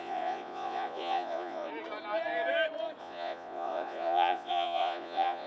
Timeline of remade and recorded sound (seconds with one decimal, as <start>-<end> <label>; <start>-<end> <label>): 0.0-1.7 remade; 1.7-3.0 recorded; 3.0-5.5 remade